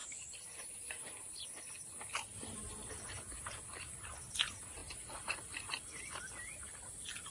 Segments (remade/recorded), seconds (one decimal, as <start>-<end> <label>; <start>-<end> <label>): 0.0-7.3 recorded